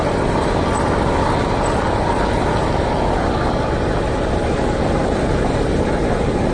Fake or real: real